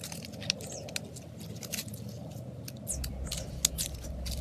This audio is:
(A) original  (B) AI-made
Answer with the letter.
A